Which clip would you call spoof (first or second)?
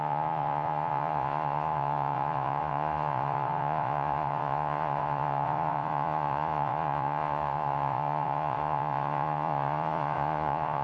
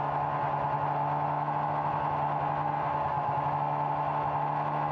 first